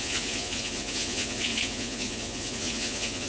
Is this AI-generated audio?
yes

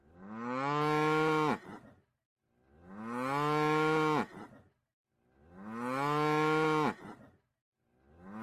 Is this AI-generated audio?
no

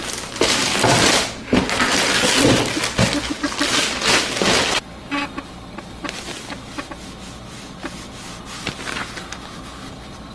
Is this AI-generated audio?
no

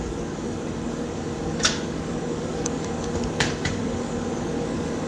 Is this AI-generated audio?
yes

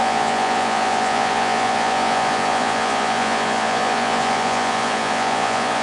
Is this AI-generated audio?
yes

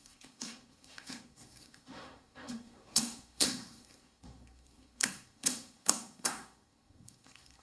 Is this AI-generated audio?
yes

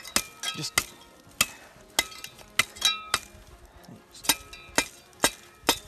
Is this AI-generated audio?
no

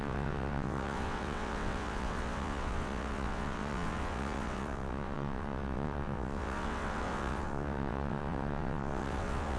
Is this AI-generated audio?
yes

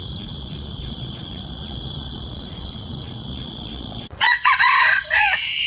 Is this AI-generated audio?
yes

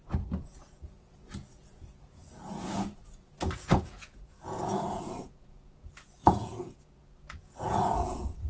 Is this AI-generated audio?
yes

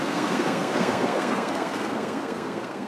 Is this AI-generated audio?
yes